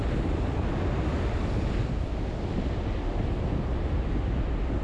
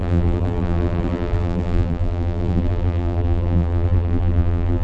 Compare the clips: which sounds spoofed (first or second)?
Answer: second